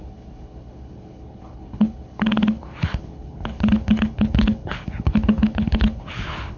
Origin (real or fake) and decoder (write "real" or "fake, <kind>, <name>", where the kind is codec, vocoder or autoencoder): fake, codec, HILCodec